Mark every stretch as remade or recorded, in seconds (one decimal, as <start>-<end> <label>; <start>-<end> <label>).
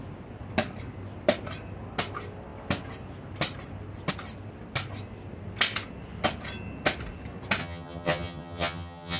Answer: 0.0-7.6 recorded; 7.6-9.2 remade